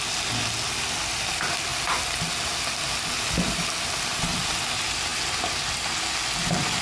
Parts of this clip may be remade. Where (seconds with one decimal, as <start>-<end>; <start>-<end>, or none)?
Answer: none